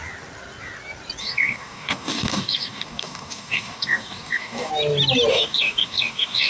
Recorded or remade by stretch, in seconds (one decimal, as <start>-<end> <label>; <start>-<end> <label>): 0.0-1.2 recorded; 1.2-4.7 remade; 4.7-5.3 recorded; 5.3-6.5 remade